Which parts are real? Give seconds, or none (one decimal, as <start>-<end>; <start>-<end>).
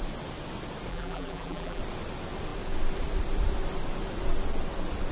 0.0-0.9; 1.8-5.1